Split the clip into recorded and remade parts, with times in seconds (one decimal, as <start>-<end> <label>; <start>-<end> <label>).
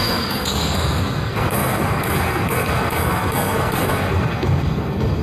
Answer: 0.0-5.2 remade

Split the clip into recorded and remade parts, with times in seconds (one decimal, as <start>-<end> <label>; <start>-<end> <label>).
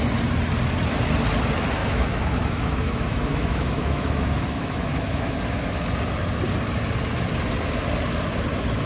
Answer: 0.0-1.8 recorded; 1.8-5.8 remade; 5.8-8.9 recorded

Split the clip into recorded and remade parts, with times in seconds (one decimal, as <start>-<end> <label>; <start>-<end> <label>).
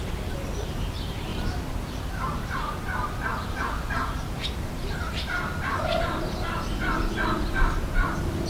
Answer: 0.0-1.3 recorded; 1.3-5.1 remade; 5.1-8.5 recorded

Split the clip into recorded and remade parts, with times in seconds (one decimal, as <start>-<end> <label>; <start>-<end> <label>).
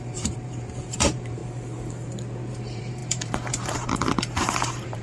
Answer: 0.0-1.4 remade; 1.4-2.5 recorded; 2.5-5.0 remade